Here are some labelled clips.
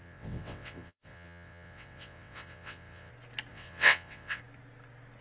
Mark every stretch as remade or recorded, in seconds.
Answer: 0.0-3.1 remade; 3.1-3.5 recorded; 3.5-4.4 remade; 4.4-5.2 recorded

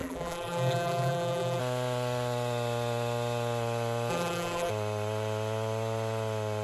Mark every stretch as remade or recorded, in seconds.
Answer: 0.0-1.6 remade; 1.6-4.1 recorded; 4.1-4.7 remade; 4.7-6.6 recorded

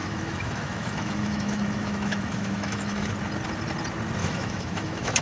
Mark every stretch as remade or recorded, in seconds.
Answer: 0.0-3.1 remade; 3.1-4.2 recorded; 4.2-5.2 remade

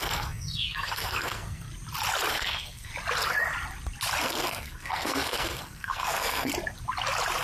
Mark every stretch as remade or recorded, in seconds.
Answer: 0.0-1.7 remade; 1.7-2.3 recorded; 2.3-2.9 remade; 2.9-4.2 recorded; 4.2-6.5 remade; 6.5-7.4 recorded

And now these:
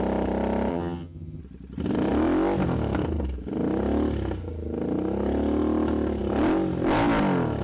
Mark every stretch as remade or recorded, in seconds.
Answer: 0.0-0.7 recorded; 0.7-1.4 remade; 1.4-7.6 recorded

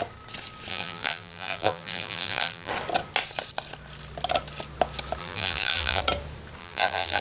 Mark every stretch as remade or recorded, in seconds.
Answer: 0.0-0.7 recorded; 0.7-2.7 remade; 2.7-5.2 recorded; 5.2-6.0 remade; 6.0-6.6 recorded; 6.6-7.2 remade

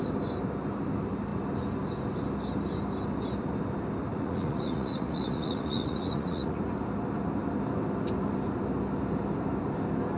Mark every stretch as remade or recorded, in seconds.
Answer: 0.0-4.1 recorded; 4.1-6.6 remade; 6.6-10.2 recorded